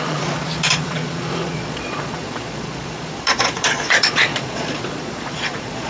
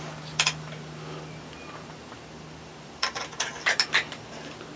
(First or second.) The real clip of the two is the second